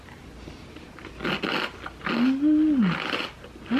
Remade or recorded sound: recorded